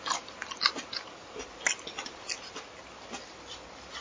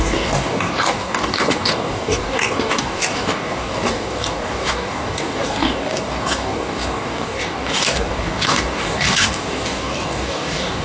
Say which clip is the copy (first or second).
second